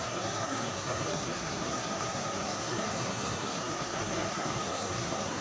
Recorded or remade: remade